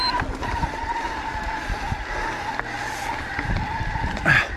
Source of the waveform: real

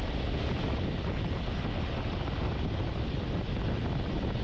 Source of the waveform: real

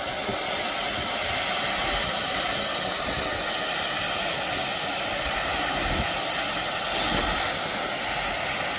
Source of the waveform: real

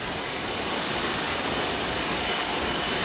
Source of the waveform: fake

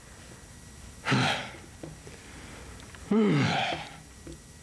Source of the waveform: real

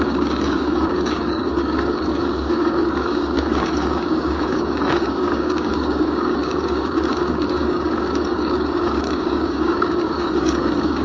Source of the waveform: fake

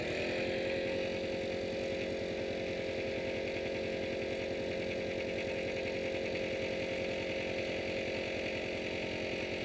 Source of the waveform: real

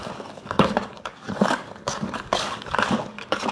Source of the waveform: fake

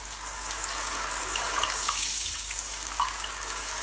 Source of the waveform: fake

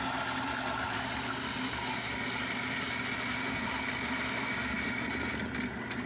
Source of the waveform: real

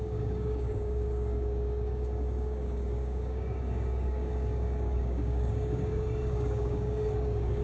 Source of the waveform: fake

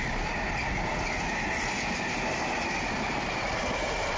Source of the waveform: real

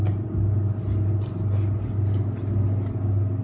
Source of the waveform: real